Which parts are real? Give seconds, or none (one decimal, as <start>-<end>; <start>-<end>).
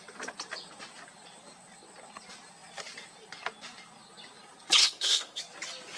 0.0-4.8; 5.4-6.0